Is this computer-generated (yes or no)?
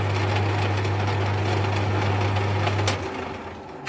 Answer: no